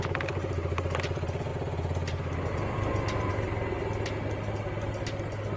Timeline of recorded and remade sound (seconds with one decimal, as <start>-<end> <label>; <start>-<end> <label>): 0.0-5.6 recorded